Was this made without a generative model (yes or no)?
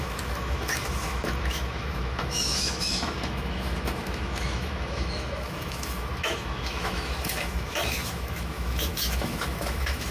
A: no